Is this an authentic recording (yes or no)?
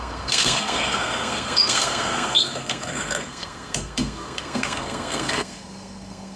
no